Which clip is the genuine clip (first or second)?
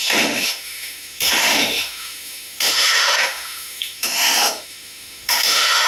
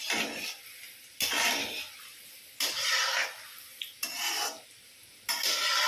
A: second